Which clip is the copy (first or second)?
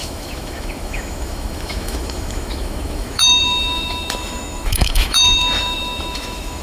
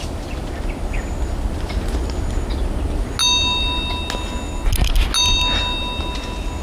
first